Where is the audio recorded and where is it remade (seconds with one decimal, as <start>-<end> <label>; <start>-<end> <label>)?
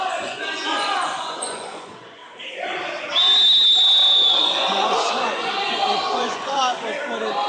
0.0-2.2 remade; 2.2-4.4 recorded; 4.4-6.6 remade; 6.6-7.5 recorded